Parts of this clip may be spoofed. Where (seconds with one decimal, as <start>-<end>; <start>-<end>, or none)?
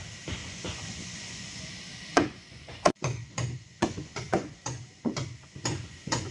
0.4-1.7; 2.1-6.3